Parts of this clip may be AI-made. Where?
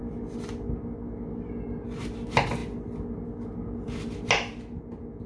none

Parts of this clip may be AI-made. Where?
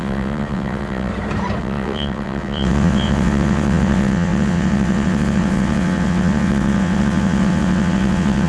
0.0-1.1 (vocoder, WaveNeXt); 1.6-8.5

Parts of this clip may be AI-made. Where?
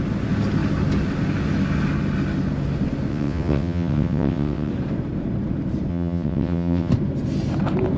3.1-4.7 (vocoder, WaveNeXt); 5.9-6.9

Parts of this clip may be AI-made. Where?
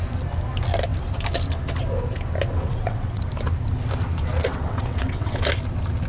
2.5-3.2 (vocoder, WaveNeXt); 4.5-5.5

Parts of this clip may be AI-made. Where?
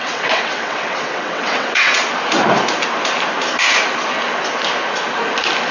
0.0-2.0 (vocoder, WaveNeXt)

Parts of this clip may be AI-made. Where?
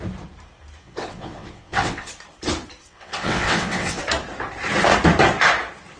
0.8-2.1 (vocoder, WaveNeXt); 2.8-4.0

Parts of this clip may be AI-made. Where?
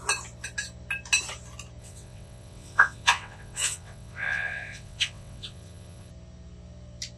1.8-6.1 (vocoder, WaveNeXt)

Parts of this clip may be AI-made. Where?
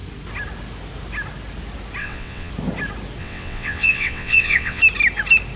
2.0-2.5 (vocoder, WaveNeXt); 3.2-4.8